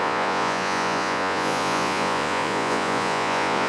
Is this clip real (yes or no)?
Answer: no